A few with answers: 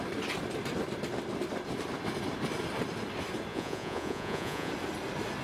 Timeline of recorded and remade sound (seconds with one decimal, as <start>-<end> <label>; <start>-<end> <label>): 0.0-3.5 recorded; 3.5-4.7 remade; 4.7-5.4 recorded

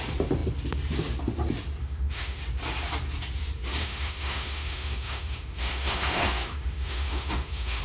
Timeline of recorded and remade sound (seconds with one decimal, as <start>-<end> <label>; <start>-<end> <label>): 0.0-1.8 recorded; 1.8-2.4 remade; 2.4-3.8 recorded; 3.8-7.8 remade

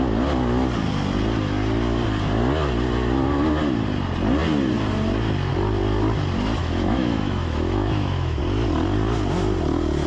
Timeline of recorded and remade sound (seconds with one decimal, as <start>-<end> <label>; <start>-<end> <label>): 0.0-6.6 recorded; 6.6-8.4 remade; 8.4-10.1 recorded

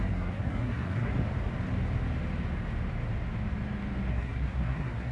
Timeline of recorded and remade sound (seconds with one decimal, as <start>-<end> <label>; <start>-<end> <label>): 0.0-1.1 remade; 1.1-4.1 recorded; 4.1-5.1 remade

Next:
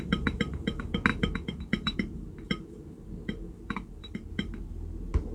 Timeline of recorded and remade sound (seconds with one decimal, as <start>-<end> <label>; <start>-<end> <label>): 0.0-1.1 recorded; 1.1-4.3 remade; 4.3-5.3 recorded